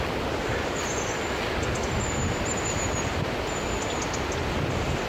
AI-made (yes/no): no